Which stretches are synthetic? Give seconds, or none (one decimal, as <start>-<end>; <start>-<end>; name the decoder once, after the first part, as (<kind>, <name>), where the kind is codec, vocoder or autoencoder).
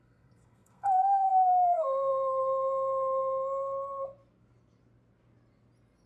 0.0-2.1 (codec, SNAC)